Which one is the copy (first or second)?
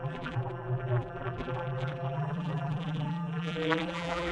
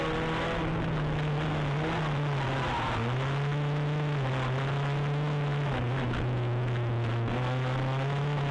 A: first